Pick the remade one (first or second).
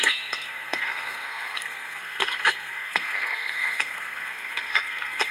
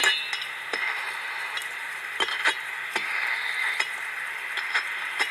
first